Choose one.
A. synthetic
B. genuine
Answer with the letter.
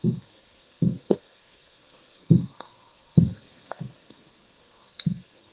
A